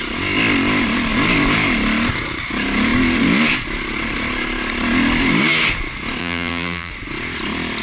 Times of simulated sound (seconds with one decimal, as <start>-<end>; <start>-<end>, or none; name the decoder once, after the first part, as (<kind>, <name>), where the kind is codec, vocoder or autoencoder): 6.2-6.9 (vocoder, BigVGAN v2)